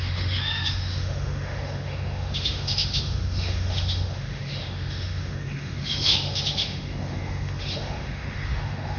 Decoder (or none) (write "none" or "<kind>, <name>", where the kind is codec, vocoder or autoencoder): autoencoder, DAC-VAE